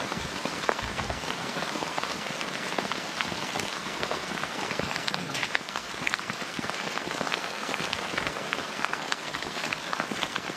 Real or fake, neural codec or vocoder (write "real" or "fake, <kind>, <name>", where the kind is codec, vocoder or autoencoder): fake, codec, SNAC